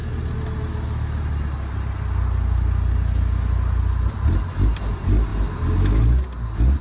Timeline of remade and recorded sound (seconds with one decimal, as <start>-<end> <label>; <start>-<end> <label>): 0.0-6.8 recorded